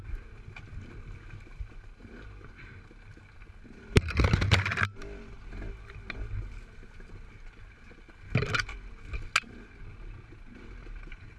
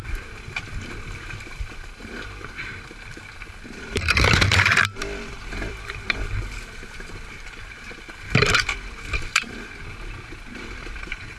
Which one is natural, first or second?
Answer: first